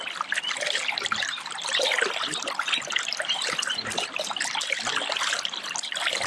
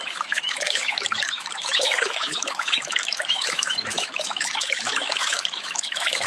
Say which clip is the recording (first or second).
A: first